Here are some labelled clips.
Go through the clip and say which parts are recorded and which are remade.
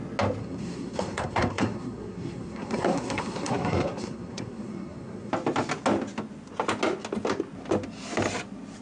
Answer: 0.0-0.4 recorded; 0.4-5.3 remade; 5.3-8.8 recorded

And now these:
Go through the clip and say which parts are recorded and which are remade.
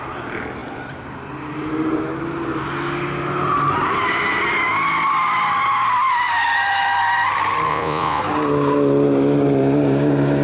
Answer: 0.0-7.7 recorded; 7.7-8.2 remade; 8.2-10.4 recorded